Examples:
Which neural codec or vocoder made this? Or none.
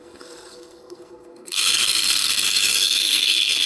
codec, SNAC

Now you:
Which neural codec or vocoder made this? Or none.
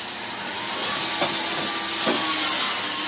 none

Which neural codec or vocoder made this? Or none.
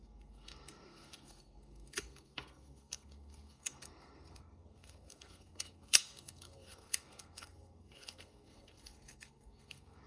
codec, SNAC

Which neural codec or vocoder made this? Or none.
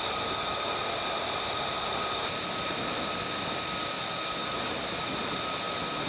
none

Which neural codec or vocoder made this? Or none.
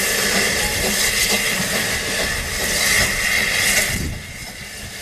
none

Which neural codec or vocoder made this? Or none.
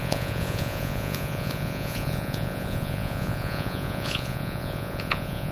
vocoder, Vocos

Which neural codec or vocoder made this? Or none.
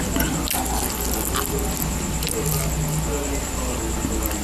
none